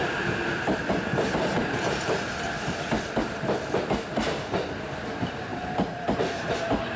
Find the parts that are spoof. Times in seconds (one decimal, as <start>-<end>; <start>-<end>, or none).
5.5-7.0